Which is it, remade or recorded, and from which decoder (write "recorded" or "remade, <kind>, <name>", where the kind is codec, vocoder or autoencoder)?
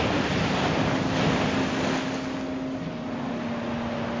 recorded